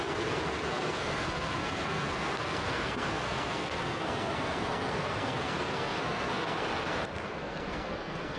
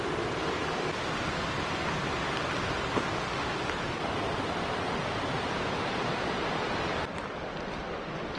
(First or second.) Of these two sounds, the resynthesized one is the first